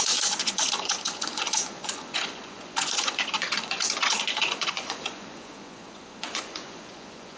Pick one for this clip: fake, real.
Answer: fake